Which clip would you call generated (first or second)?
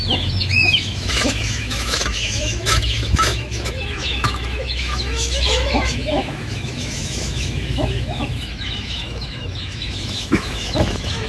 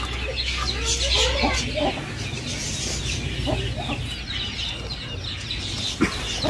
first